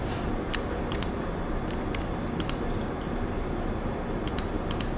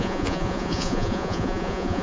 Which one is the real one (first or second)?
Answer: first